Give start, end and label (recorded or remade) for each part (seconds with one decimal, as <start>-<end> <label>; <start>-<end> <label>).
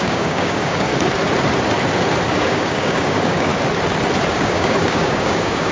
0.0-0.9 remade; 0.9-2.3 recorded; 2.3-3.5 remade; 3.5-4.3 recorded; 4.3-5.7 remade